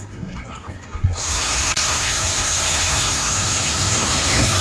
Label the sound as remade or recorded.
remade